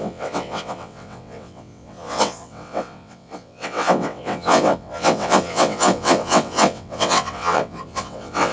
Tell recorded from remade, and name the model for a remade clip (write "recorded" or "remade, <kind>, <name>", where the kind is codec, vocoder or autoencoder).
remade, vocoder, WaveNeXt